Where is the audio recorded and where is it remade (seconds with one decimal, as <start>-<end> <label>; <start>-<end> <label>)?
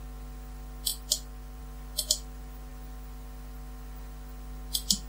0.0-5.1 recorded